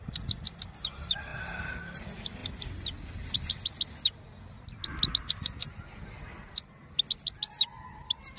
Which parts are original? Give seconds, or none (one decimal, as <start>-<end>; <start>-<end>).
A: 0.0-8.4